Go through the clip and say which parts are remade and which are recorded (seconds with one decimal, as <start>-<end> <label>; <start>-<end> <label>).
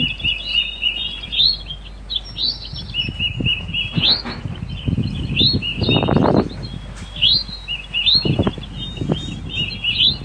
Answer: 0.0-0.5 recorded; 0.5-1.6 remade; 1.6-10.2 recorded